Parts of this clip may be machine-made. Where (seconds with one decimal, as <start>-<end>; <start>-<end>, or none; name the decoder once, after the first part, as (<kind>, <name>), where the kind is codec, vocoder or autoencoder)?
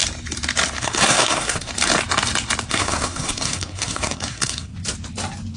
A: 0.8-1.7 (codec, SNAC); 2.7-4.7